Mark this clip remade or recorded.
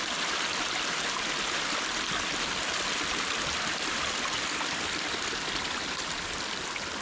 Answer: recorded